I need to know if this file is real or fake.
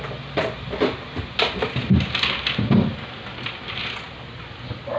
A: real